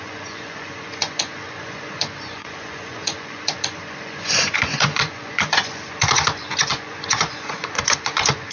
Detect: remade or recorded remade